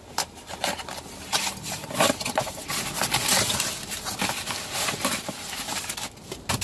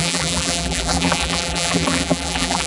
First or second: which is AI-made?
second